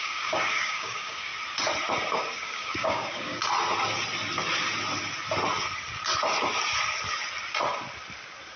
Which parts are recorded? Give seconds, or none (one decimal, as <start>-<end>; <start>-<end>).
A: 1.3-2.1; 3.4-8.6